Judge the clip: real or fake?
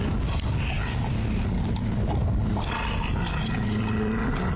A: real